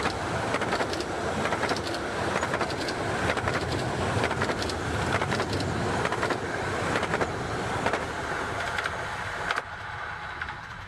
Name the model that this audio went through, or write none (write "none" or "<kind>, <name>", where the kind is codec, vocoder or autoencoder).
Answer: none